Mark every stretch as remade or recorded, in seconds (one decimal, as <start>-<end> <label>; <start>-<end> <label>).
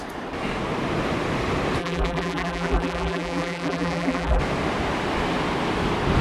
0.0-1.8 recorded; 1.8-4.4 remade; 4.4-6.2 recorded